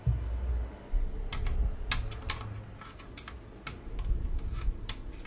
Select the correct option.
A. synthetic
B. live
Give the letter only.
B